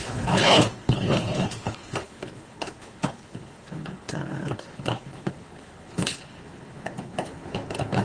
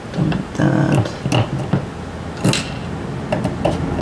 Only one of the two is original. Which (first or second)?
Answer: second